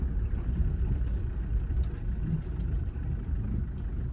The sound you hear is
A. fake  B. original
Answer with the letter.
B